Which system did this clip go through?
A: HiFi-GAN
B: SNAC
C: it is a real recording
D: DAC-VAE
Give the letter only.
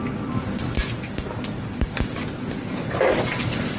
C